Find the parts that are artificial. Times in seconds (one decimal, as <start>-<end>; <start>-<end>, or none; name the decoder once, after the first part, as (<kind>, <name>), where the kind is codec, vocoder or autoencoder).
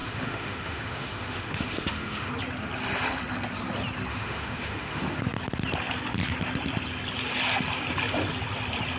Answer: 0.0-2.3 (autoencoder, DAC-VAE); 4.1-5.2